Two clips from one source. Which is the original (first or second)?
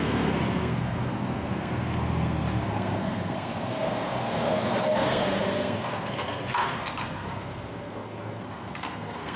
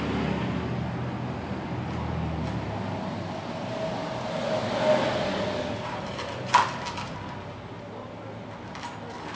second